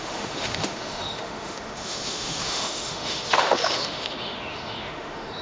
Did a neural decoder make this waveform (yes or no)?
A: yes